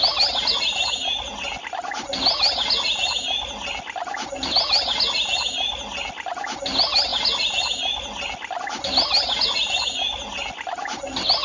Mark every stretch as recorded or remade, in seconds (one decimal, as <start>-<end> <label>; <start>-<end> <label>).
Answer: 0.0-11.4 recorded